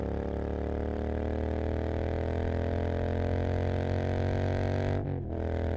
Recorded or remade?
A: recorded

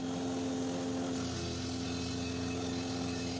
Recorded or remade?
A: recorded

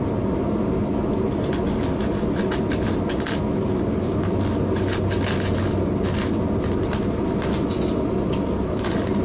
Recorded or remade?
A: recorded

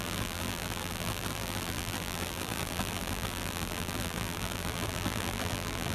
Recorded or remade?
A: remade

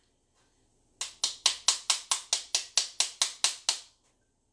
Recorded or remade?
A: recorded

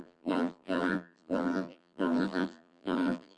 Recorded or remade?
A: remade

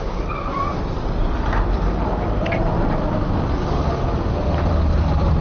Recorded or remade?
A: remade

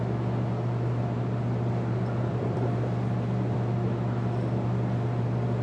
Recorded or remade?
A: remade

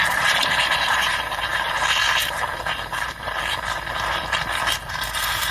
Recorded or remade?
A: remade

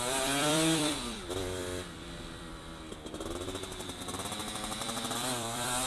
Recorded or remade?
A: remade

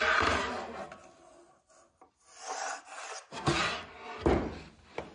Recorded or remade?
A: recorded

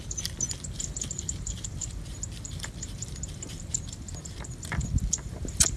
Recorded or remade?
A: remade